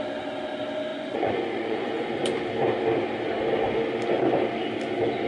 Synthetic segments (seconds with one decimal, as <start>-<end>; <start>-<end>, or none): 0.9-2.1